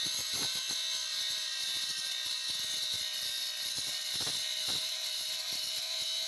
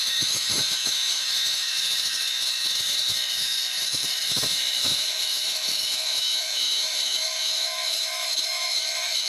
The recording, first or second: first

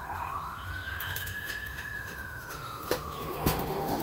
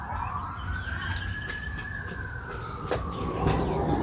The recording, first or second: second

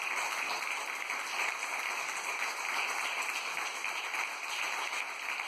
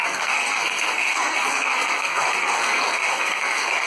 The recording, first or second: first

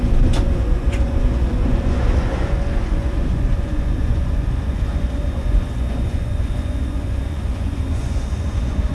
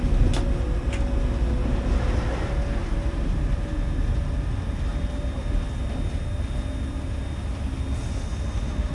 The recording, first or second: second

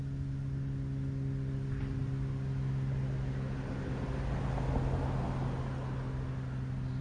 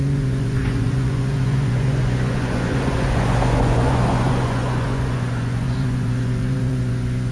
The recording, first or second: first